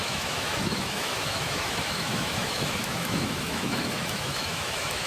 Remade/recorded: remade